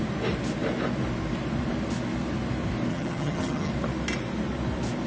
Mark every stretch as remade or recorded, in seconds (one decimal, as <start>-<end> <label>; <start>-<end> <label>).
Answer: 0.0-2.9 recorded; 2.9-3.7 remade; 3.7-5.1 recorded